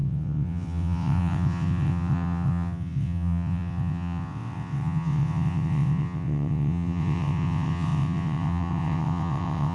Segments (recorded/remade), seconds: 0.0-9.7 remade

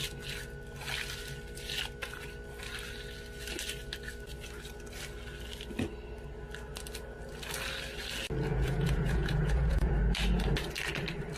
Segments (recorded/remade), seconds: 0.0-8.5 recorded; 8.5-9.9 remade; 9.9-11.4 recorded

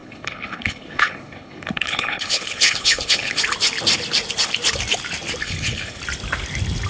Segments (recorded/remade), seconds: 0.0-3.4 remade; 3.4-5.4 recorded; 5.4-6.0 remade; 6.0-6.9 recorded

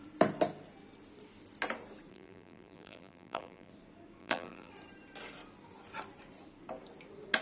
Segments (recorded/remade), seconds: 0.0-2.1 recorded; 2.1-3.7 remade; 3.7-4.2 recorded; 4.2-4.7 remade; 4.7-7.4 recorded

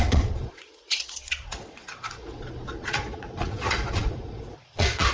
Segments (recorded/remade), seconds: 0.0-5.1 remade